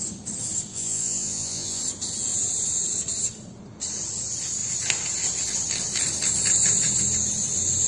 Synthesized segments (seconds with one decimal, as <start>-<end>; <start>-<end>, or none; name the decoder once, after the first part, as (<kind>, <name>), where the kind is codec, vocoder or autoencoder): 0.7-1.8 (vocoder, Vocos)